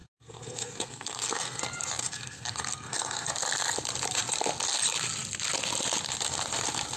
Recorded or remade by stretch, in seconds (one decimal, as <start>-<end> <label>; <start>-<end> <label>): 0.0-1.6 remade; 1.6-2.0 recorded; 2.0-3.3 remade; 3.3-7.0 recorded